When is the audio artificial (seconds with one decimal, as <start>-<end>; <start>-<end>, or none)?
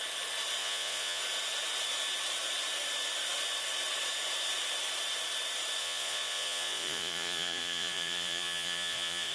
0.6-1.2; 5.8-9.3